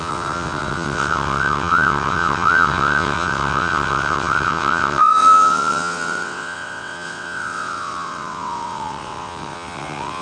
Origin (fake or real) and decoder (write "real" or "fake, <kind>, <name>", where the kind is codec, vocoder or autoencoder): fake, vocoder, WaveNeXt